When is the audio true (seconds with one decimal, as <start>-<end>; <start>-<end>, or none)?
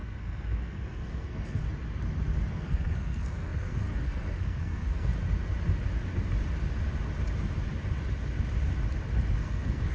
1.6-2.5; 5.1-9.3